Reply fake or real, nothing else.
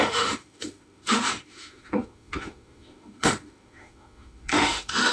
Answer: fake